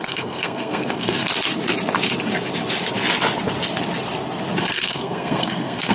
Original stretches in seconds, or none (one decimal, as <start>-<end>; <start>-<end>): 1.3-4.6